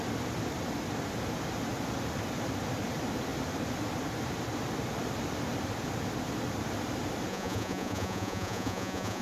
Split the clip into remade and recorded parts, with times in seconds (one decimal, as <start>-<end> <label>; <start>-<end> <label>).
0.0-7.3 recorded; 7.3-9.2 remade